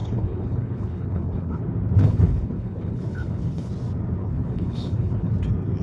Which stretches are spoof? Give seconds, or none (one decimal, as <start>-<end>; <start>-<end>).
0.0-1.6; 2.0-3.7; 4.2-5.3